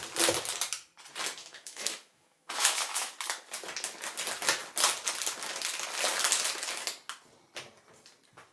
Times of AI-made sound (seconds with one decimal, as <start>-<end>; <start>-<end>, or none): 1.4-3.1